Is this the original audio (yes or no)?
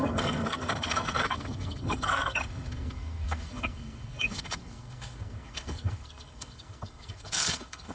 no